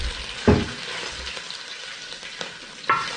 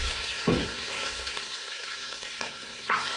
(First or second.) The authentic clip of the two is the first